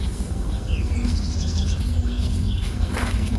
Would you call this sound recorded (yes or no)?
no